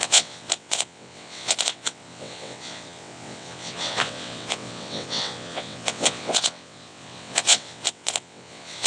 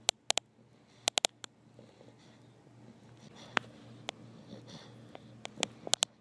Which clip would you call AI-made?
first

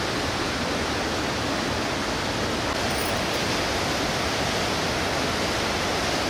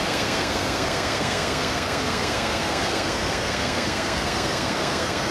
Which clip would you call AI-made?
second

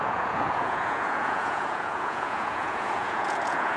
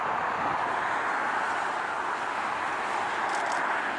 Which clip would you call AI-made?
first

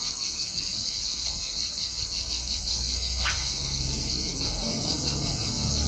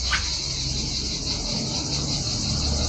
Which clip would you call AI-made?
first